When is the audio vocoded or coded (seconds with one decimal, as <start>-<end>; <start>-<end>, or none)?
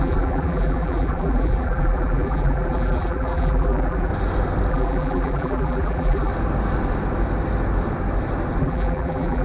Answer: 0.0-4.1; 4.7-6.3; 8.6-9.4